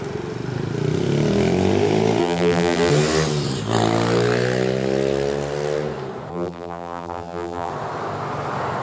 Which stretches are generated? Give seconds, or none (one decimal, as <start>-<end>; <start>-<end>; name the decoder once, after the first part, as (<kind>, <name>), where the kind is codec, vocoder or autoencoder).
2.2-2.9 (vocoder, BigVGAN v2); 6.3-7.7